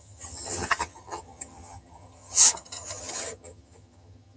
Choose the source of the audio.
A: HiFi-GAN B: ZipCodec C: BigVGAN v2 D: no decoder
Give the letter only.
A